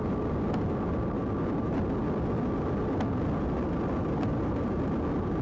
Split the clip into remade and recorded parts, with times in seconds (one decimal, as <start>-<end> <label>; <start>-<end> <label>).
0.0-5.4 recorded